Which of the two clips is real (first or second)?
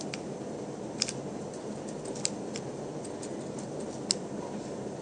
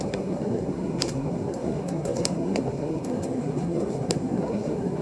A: first